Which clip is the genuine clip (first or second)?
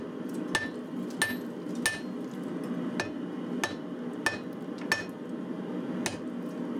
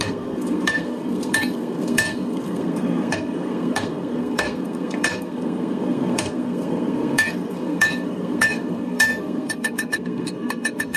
first